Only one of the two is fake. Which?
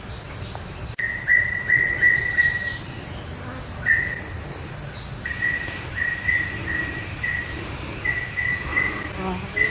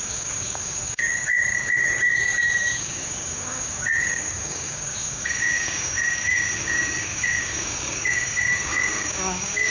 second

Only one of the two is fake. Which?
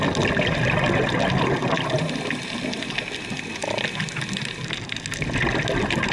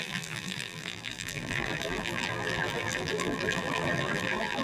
second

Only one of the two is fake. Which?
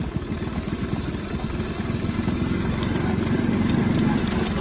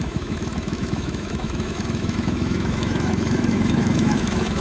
second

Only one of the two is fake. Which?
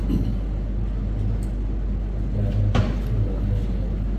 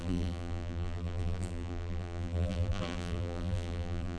second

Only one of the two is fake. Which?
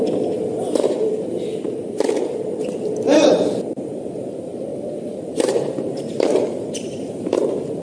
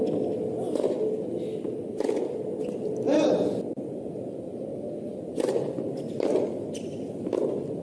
first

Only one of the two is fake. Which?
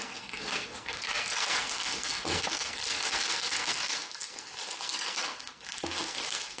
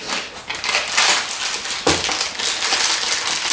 first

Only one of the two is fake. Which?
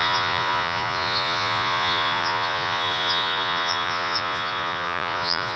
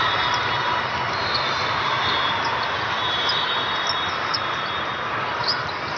first